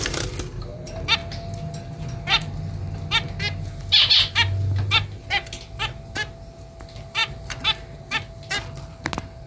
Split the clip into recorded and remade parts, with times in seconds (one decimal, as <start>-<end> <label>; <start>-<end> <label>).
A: 0.0-9.5 recorded